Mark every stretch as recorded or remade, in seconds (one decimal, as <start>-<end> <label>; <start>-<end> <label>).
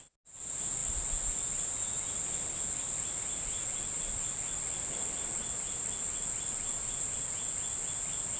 0.0-8.4 recorded